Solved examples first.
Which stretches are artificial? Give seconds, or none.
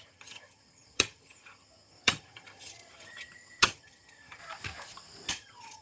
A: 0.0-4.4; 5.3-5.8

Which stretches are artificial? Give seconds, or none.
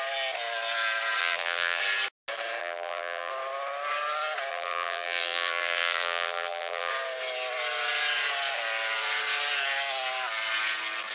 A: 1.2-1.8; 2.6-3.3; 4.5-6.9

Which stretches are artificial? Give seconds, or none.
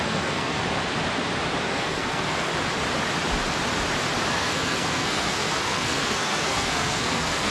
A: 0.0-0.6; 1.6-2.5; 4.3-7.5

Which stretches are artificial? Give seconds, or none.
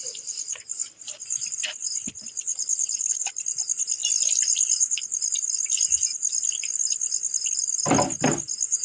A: 2.5-3.4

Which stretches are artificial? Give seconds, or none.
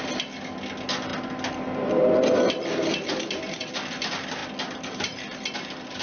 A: none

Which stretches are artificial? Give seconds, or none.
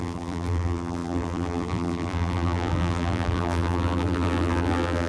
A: 0.0-5.1